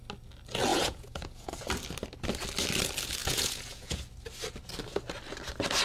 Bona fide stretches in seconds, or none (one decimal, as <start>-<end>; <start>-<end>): 0.0-0.7; 1.5-3.2; 4.0-5.8